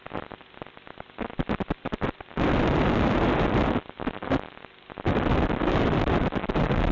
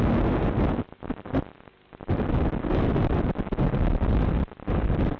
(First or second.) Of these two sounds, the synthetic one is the first